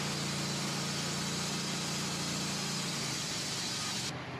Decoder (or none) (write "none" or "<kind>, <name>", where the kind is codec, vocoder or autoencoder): none